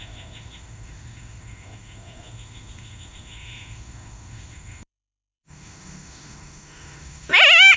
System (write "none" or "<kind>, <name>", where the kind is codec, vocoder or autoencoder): autoencoder, DAC-VAE